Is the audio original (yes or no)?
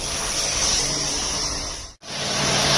yes